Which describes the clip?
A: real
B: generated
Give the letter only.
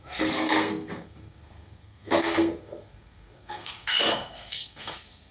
B